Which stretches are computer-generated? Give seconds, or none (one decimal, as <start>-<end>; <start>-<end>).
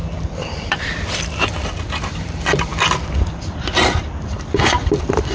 0.0-5.3